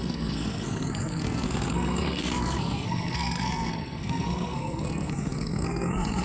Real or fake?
fake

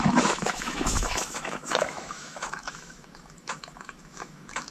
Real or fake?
fake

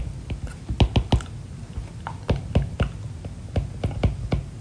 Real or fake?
real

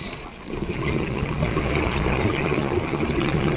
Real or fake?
fake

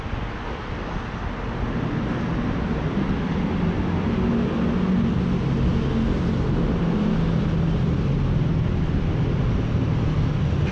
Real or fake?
real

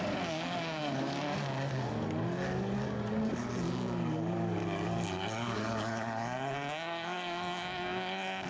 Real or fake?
fake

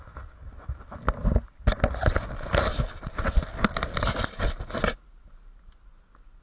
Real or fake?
real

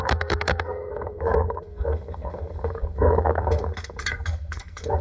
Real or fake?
fake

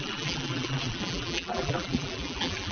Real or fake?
fake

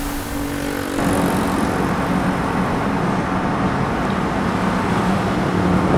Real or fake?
real